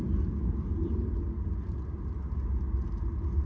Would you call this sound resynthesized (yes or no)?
no